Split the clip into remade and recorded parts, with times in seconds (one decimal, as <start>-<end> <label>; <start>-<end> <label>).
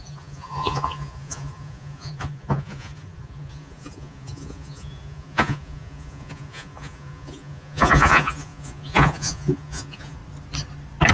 0.0-10.2 remade; 10.2-11.1 recorded